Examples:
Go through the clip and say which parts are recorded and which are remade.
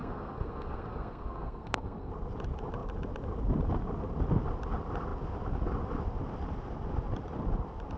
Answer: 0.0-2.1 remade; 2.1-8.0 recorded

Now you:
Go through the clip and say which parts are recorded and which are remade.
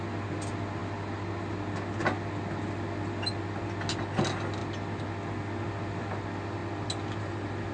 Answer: 0.0-7.7 recorded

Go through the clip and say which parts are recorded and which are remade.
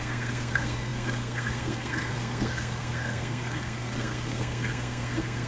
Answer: 0.0-5.5 remade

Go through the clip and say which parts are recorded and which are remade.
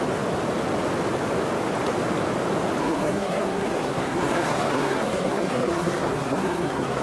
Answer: 0.0-2.8 recorded; 2.8-7.0 remade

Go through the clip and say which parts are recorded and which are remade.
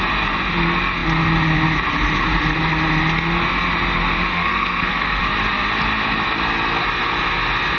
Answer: 0.0-4.3 recorded; 4.3-5.2 remade; 5.2-7.8 recorded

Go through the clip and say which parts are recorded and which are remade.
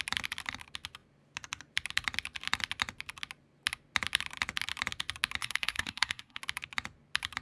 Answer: 0.0-5.4 recorded; 5.4-6.4 remade; 6.4-7.4 recorded